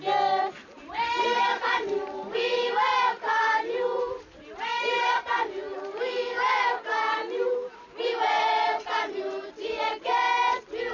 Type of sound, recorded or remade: recorded